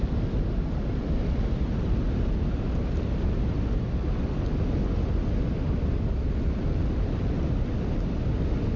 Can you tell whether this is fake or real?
real